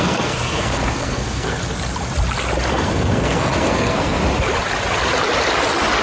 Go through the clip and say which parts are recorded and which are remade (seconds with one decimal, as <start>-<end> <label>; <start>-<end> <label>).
0.0-1.6 remade; 1.6-2.7 recorded; 2.7-4.2 remade; 4.2-6.0 recorded